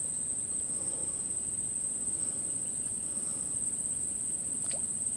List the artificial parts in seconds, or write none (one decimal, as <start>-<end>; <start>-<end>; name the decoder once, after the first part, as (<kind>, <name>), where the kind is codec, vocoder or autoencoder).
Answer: 0.0-1.0 (vocoder, Vocos); 2.2-5.2